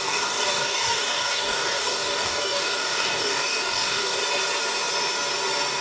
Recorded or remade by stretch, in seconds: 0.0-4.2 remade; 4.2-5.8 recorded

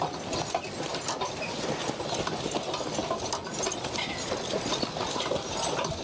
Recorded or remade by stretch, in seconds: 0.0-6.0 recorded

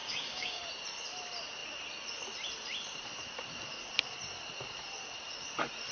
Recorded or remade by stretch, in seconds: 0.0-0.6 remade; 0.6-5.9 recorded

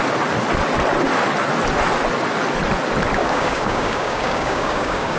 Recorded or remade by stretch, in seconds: 0.0-3.2 recorded; 3.2-5.2 remade

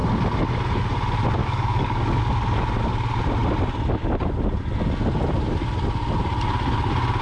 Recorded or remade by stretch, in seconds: 0.0-1.4 recorded; 1.4-2.2 remade; 2.2-7.2 recorded

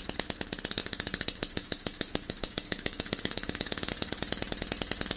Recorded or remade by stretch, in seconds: 0.0-0.8 recorded; 0.8-3.9 remade; 3.9-5.2 recorded

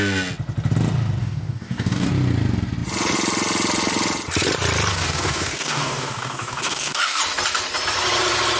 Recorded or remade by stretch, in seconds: 0.0-1.2 recorded; 1.2-2.1 remade; 2.1-4.9 recorded; 4.9-7.2 remade; 7.2-8.6 recorded